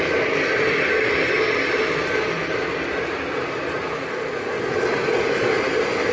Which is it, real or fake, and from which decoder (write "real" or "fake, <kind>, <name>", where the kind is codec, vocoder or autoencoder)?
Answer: real